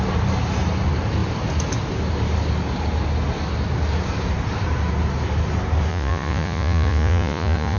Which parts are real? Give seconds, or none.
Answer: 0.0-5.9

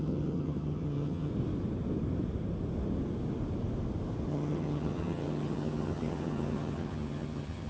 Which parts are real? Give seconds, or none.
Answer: 1.3-4.3

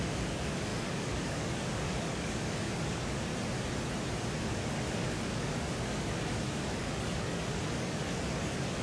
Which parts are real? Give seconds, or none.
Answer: 3.3-4.4